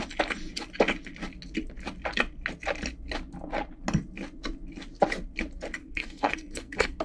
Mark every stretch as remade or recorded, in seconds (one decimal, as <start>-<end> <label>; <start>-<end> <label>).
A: 0.0-5.8 recorded; 5.8-7.0 remade